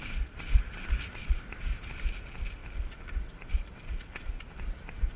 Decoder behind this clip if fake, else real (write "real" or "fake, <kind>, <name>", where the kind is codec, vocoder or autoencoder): real